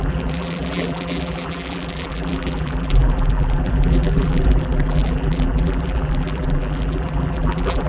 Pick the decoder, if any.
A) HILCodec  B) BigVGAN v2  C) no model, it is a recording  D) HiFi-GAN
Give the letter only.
B